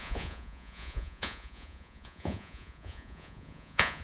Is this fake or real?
fake